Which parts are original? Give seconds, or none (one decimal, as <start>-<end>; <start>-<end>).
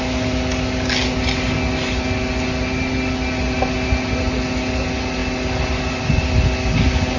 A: 0.0-7.2